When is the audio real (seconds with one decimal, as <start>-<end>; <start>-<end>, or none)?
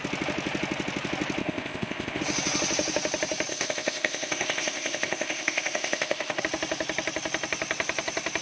0.0-1.4; 2.2-3.5; 6.4-8.4